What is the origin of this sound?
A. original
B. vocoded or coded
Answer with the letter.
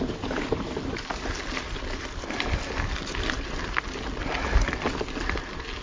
A